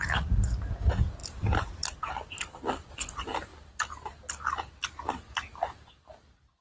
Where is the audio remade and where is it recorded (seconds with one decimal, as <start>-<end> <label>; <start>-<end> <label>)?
0.0-1.2 recorded; 1.2-2.1 remade; 2.1-6.6 recorded

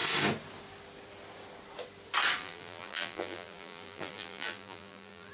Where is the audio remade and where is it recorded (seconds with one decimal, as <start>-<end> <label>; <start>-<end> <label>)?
0.0-2.4 recorded; 2.4-5.3 remade

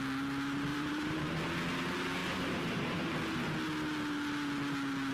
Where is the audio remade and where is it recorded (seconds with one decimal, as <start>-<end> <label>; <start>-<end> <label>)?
0.0-0.7 recorded; 0.7-1.4 remade; 1.4-2.2 recorded; 2.2-3.0 remade; 3.0-5.1 recorded

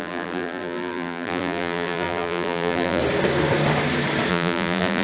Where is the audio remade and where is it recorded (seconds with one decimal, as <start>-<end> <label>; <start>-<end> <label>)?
0.0-3.0 remade; 3.0-4.3 recorded; 4.3-5.0 remade